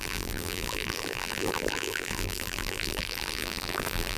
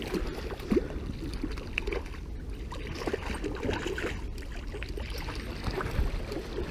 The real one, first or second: second